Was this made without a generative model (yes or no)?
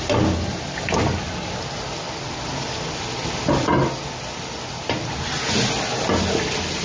yes